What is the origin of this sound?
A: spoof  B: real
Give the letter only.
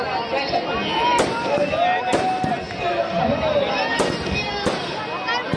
B